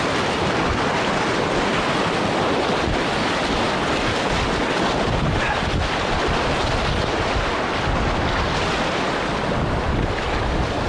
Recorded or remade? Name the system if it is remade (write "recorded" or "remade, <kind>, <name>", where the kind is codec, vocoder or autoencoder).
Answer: recorded